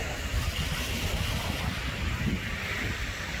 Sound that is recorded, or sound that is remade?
recorded